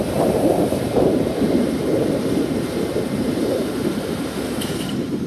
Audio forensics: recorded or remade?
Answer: remade